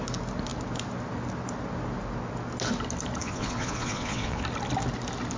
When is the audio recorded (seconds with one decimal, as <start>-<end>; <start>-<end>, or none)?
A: 0.0-3.2; 4.4-5.4